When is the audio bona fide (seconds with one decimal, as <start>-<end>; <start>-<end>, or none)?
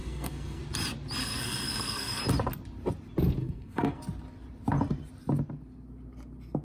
0.6-1.2; 2.2-3.4; 4.0-6.6